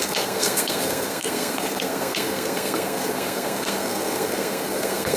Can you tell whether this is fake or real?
fake